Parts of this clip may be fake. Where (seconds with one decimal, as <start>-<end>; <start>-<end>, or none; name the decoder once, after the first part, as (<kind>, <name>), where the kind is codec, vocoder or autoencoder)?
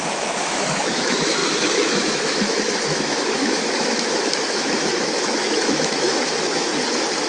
0.0-6.7 (autoencoder, DAC-VAE)